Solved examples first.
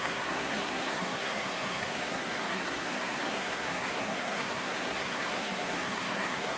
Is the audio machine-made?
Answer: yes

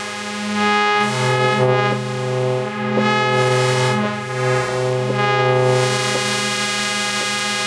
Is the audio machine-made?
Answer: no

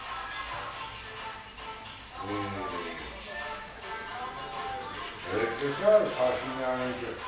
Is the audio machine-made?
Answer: no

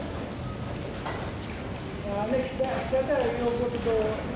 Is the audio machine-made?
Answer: no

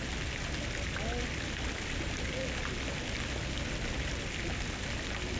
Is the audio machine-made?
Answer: no